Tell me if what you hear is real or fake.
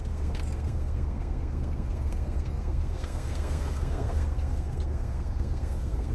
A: fake